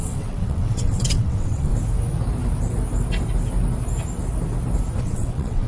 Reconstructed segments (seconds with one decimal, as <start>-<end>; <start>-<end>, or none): 0.0-1.7; 5.0-5.7

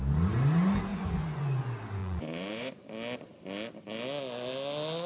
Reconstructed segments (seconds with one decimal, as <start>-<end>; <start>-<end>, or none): 0.9-1.6; 2.0-2.8

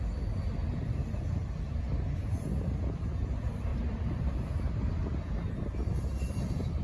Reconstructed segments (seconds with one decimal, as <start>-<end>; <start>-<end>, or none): 0.6-1.8; 2.5-3.3; 3.7-4.7

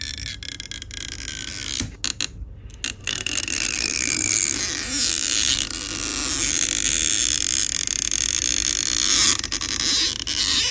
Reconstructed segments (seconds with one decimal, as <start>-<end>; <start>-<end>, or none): 3.0-4.6